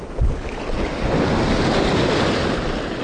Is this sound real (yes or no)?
yes